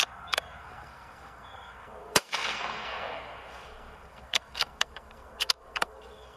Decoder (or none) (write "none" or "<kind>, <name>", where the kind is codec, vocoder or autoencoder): codec, SNAC